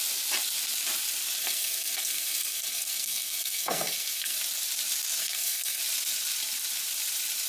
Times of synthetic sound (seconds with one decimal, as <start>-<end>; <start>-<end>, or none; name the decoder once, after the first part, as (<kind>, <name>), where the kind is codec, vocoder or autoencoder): 1.4-4.4 (codec, SNAC); 5.2-5.8

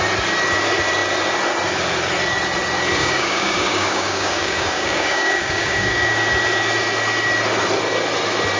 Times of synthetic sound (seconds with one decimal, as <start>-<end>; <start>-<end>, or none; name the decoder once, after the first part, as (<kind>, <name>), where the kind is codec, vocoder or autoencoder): 3.0-6.1 (codec, DAC)

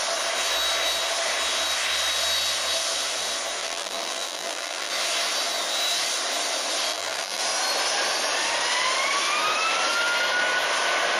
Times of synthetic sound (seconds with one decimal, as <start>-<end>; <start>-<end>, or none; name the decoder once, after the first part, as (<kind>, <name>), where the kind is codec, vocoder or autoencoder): 3.6-4.9 (vocoder, BigVGAN v2); 6.9-7.4